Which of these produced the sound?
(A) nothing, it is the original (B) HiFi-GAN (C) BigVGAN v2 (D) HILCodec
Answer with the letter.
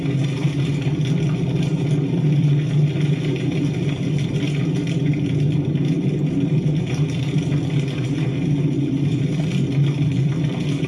A